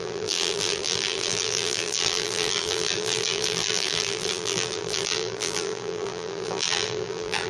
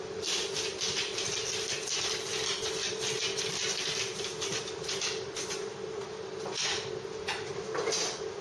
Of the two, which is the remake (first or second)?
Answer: first